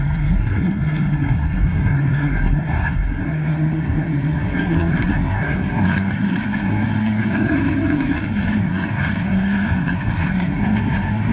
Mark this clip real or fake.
fake